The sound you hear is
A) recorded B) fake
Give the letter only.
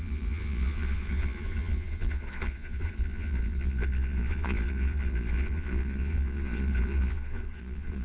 B